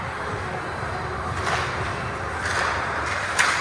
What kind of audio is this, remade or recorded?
recorded